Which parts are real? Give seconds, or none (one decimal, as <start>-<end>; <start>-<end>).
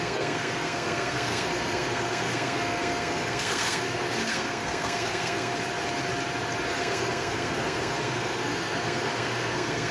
5.5-6.7